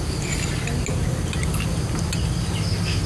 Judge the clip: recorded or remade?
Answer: recorded